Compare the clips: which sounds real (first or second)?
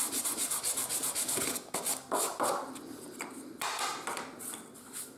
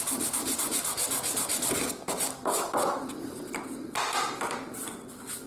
second